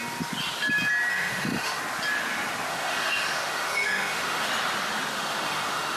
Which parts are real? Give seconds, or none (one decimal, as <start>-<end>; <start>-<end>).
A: 0.0-1.1; 1.8-2.7; 4.5-5.1